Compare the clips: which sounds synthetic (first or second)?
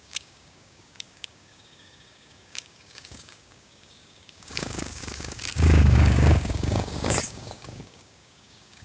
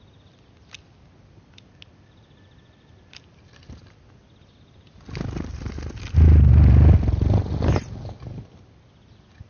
first